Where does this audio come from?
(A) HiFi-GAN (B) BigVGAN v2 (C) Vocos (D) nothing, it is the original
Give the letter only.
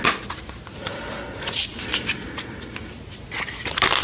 D